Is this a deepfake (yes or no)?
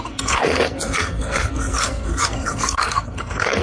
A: yes